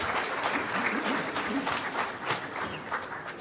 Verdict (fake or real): fake